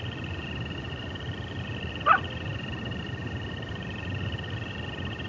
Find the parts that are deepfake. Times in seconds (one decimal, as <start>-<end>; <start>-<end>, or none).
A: none